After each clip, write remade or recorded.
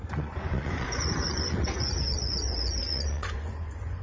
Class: remade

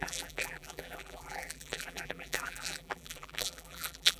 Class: remade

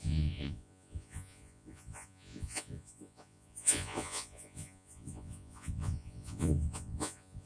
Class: remade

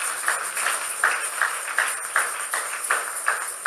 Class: recorded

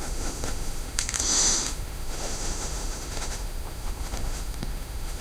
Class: remade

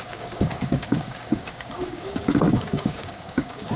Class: remade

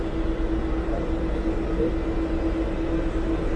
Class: recorded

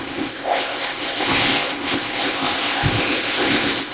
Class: remade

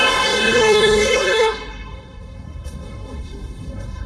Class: remade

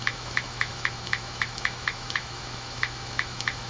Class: remade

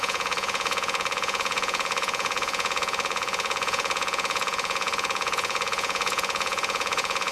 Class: remade